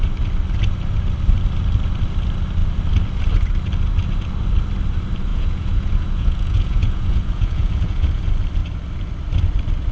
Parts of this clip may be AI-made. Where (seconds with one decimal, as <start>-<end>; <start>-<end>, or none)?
5.3-8.2